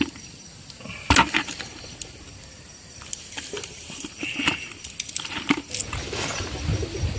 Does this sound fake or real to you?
real